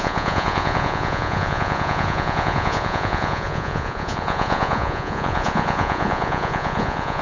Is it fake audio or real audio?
fake